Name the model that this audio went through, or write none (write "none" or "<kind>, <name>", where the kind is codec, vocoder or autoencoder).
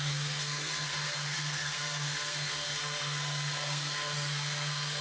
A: codec, SNAC